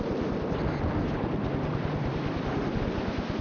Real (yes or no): no